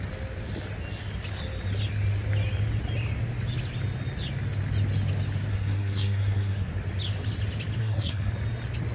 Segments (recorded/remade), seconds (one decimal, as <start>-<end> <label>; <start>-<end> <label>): 0.0-5.5 recorded; 5.5-6.7 remade; 6.7-7.8 recorded; 7.8-8.3 remade; 8.3-8.9 recorded